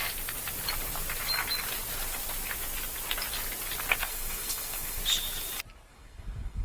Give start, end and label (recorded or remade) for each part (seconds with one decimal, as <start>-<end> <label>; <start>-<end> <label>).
0.0-4.0 recorded; 4.0-5.0 remade; 5.0-5.9 recorded; 5.9-6.6 remade